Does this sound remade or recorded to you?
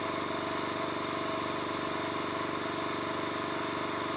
recorded